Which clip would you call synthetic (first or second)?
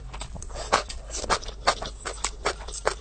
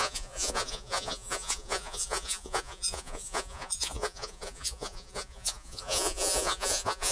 second